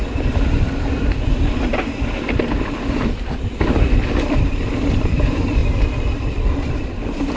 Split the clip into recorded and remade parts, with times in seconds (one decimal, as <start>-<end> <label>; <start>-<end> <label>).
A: 0.0-5.6 remade; 5.6-6.7 recorded; 6.7-7.4 remade

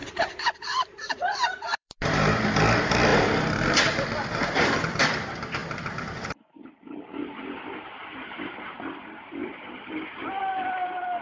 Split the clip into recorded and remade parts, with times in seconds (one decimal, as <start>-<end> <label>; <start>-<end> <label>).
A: 0.0-2.4 remade; 2.4-7.2 recorded; 7.2-10.4 remade; 10.4-11.2 recorded

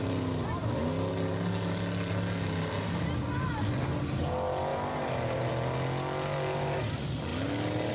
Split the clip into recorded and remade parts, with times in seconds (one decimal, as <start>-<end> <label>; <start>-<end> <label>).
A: 0.0-4.7 recorded; 4.7-5.5 remade; 5.5-7.9 recorded

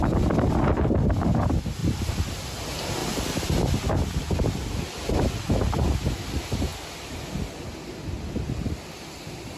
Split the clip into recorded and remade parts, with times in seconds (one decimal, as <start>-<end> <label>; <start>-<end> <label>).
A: 0.0-3.0 recorded; 3.0-3.7 remade; 3.7-9.6 recorded